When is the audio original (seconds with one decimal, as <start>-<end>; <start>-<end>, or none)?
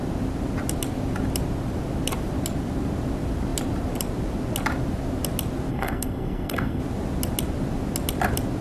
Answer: 0.0-5.7; 6.8-8.6